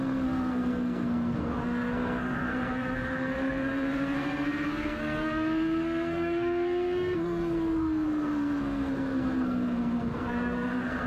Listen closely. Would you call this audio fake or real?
fake